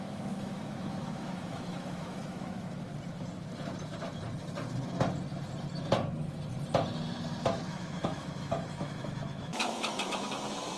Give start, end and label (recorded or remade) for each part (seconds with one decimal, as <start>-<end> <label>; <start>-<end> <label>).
0.0-2.9 remade; 2.9-7.4 recorded; 7.4-10.8 remade